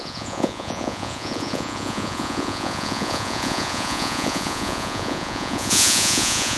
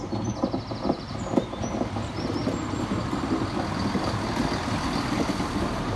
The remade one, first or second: first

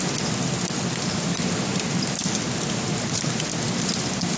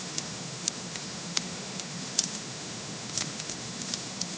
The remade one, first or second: second